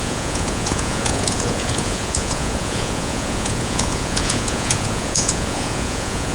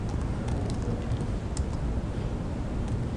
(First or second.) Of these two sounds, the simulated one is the first